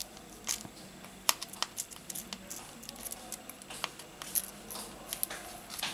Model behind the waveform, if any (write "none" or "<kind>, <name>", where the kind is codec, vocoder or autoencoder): none